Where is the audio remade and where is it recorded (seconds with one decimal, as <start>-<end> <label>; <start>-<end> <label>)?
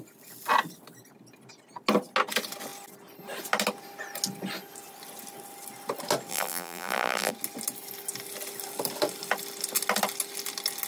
0.0-6.3 recorded; 6.3-7.3 remade; 7.3-10.9 recorded